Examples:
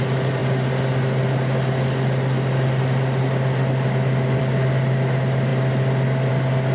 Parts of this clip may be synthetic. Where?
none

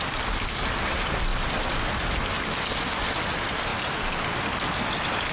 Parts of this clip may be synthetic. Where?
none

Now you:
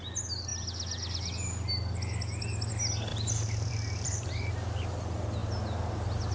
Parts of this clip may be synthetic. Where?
3.1-4.5 (vocoder, BigVGAN v2)